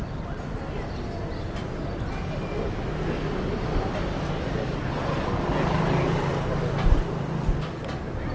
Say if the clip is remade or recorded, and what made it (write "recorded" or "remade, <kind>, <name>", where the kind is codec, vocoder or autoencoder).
recorded